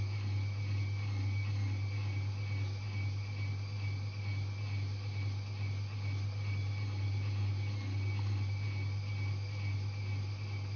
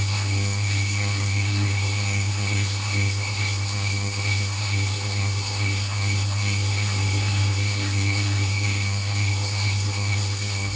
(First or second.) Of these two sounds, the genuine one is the first